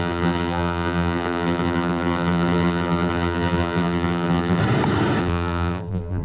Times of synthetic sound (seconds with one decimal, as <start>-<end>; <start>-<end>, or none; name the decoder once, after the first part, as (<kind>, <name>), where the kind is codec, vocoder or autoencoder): 0.0-4.6 (vocoder, BigVGAN v2); 5.2-6.2